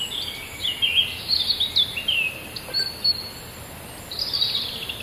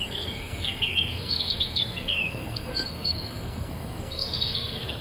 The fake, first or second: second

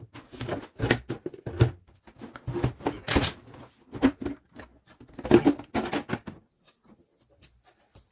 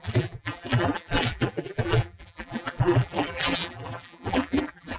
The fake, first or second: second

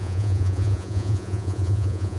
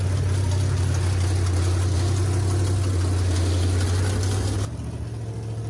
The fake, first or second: first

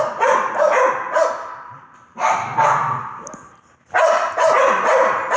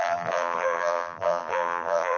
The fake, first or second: second